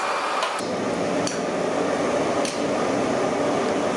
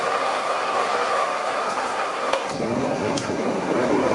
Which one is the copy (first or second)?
second